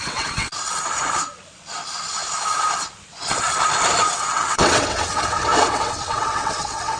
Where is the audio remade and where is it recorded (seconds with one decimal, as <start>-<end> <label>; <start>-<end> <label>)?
0.0-0.5 remade; 0.5-4.0 recorded; 4.0-7.0 remade

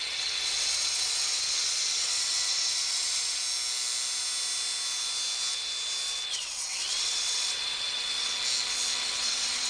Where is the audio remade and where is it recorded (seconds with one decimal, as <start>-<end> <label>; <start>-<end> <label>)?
0.0-3.4 remade; 3.4-6.3 recorded; 6.3-8.3 remade; 8.3-9.0 recorded; 9.0-9.7 remade